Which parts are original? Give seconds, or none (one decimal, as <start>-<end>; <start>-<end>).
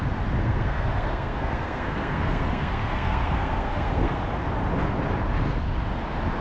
0.0-0.4; 4.2-6.4